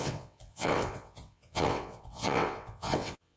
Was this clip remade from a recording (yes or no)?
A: yes